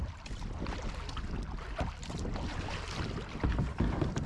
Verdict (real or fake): real